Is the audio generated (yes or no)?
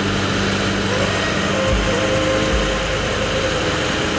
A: no